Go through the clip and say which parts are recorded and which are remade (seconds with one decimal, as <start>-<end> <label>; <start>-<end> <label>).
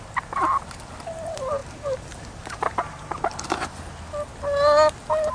0.0-1.6 recorded; 1.6-3.2 remade; 3.2-5.3 recorded